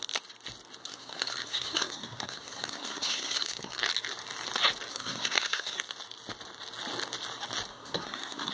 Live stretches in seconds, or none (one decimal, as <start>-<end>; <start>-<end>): 0.0-0.8; 3.9-4.9; 5.8-7.7